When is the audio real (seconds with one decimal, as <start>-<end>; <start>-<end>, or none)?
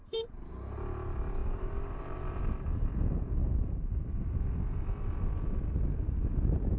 0.5-1.4; 2.8-3.4; 4.1-6.8